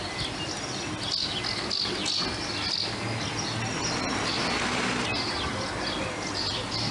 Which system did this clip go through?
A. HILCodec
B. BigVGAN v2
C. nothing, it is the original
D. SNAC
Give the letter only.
C